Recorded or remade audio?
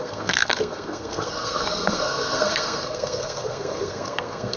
remade